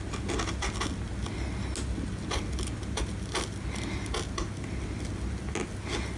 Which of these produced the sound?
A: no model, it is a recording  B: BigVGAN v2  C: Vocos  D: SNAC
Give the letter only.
A